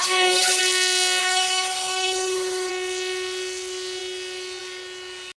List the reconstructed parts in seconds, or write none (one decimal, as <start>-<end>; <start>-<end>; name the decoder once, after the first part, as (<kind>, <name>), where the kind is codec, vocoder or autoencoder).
0.0-0.6 (codec, HILCodec); 1.2-2.7